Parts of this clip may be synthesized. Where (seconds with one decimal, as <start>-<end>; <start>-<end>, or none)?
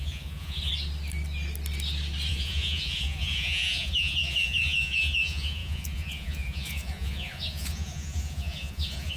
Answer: 0.0-0.7; 2.3-9.2